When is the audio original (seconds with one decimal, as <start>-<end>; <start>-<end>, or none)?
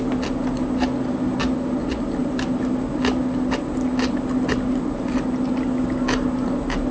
0.0-6.9